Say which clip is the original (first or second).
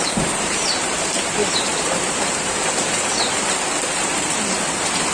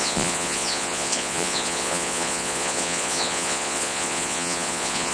first